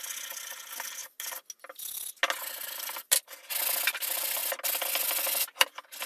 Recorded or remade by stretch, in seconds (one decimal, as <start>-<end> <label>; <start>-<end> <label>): 0.0-6.1 recorded